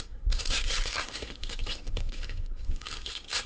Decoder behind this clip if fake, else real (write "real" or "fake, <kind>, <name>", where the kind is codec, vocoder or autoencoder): fake, codec, SNAC